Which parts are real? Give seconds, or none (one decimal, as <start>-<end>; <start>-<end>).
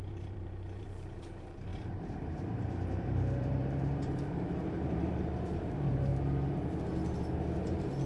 6.1-7.6